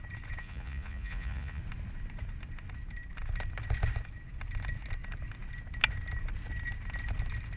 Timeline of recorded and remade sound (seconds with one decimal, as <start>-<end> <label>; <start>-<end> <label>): 0.0-0.4 recorded; 0.4-1.6 remade; 1.6-7.6 recorded

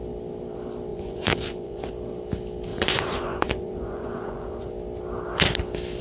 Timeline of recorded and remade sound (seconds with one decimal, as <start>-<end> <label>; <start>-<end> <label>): 0.0-0.9 recorded; 0.9-1.9 remade; 1.9-2.7 recorded; 2.7-4.7 remade; 4.7-6.0 recorded

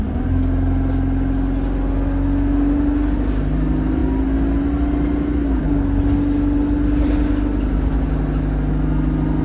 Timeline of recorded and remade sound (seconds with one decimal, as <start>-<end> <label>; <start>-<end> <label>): 0.0-9.4 recorded

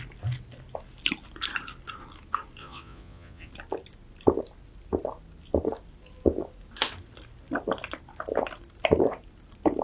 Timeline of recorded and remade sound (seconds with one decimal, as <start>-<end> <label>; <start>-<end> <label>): 0.0-2.6 recorded; 2.6-3.5 remade; 3.5-9.8 recorded

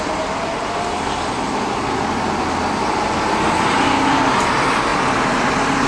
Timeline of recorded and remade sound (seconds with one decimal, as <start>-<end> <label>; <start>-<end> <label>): 0.0-5.9 recorded

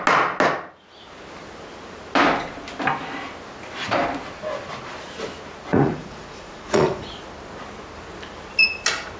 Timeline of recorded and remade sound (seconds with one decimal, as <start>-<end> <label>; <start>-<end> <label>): 0.0-5.7 recorded; 5.7-7.2 remade; 7.2-9.2 recorded